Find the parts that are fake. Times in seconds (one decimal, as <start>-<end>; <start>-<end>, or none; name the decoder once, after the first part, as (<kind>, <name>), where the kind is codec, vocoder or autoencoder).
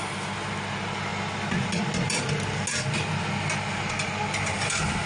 none